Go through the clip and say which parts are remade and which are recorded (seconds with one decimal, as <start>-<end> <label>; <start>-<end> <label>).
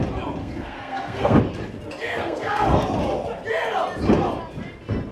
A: 0.0-0.4 recorded; 0.4-1.4 remade; 1.4-2.0 recorded; 2.0-2.8 remade; 2.8-5.1 recorded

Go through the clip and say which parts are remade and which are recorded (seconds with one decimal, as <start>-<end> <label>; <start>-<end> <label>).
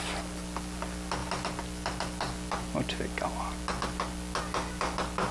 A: 0.0-5.3 recorded